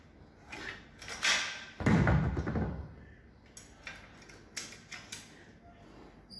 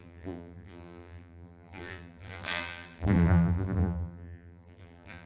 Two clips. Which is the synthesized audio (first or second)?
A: second